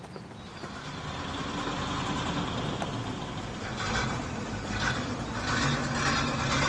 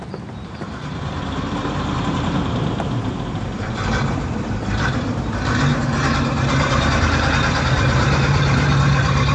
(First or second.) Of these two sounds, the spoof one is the second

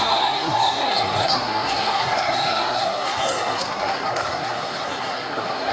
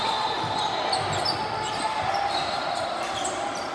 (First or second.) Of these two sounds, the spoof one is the first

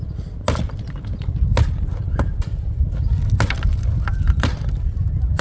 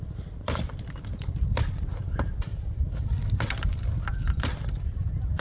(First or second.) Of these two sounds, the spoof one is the second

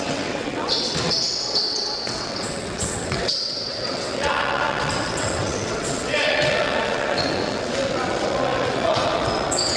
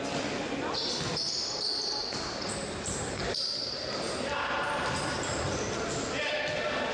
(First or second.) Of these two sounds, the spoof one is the first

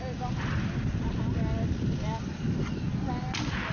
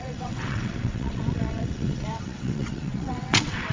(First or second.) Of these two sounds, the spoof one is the second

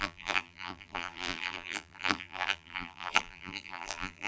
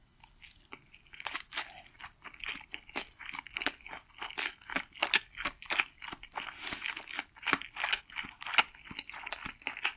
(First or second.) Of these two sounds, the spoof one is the first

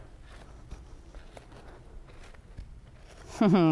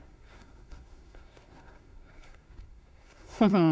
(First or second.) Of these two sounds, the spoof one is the second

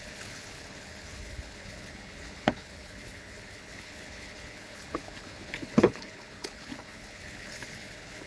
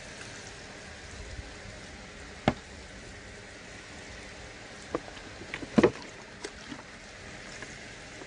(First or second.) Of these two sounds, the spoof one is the first